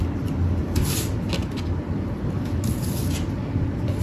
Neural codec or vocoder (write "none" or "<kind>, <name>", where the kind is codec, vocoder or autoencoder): none